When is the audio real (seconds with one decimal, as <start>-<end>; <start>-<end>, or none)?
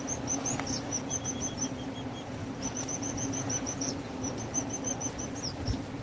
0.0-2.4; 3.9-6.0